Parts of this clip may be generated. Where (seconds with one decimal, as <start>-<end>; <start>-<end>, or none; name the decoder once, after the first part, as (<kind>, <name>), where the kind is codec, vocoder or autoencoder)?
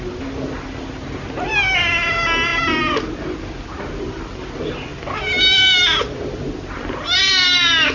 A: none